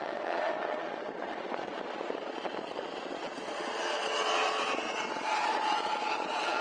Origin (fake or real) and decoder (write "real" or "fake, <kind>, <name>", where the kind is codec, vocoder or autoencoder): fake, vocoder, Vocos